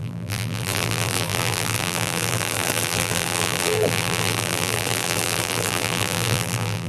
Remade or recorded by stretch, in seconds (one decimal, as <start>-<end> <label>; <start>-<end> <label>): 0.0-6.9 remade